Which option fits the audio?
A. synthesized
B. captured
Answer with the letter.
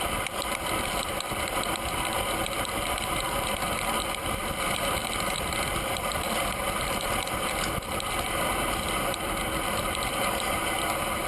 B